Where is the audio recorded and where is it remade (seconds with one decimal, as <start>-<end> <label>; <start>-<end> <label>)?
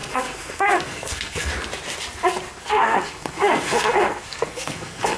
0.0-1.5 remade; 1.5-2.6 recorded; 2.6-5.2 remade